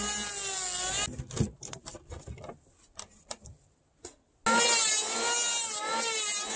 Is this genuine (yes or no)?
yes